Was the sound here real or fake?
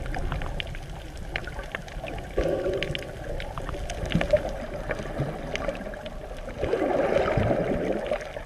real